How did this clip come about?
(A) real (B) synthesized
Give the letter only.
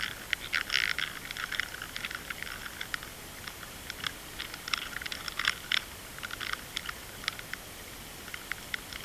A